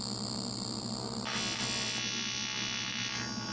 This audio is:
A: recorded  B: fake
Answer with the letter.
A